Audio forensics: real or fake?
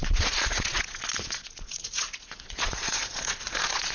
fake